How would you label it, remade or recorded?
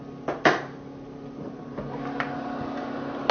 recorded